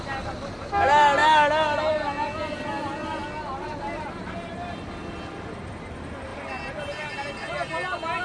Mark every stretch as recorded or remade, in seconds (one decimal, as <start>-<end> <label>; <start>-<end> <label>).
0.0-8.2 recorded